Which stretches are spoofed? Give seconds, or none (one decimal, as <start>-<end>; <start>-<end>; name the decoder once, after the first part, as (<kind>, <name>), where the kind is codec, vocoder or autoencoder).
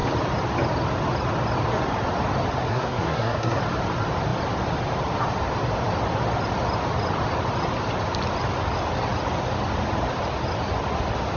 2.7-3.6 (codec, SNAC)